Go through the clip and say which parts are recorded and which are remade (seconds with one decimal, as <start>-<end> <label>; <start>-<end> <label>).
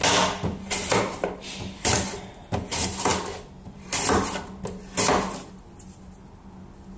0.0-7.0 recorded